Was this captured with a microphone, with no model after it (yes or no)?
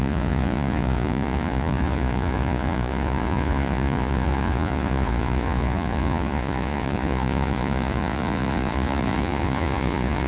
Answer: no